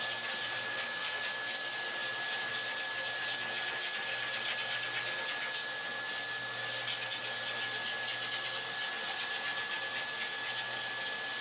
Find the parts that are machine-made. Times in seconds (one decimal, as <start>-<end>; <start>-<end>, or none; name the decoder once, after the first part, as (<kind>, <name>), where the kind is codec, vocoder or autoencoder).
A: 0.7-1.2 (codec, SNAC)